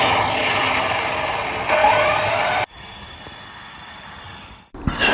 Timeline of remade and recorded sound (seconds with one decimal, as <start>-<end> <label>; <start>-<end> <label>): 0.0-1.8 recorded; 1.8-2.3 remade; 2.3-5.1 recorded